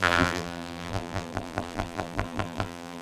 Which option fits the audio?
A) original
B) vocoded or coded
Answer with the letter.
B